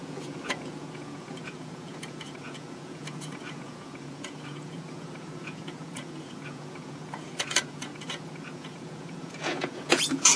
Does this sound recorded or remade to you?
remade